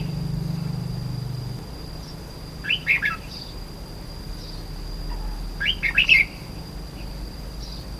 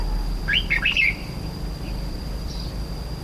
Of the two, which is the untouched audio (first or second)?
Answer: first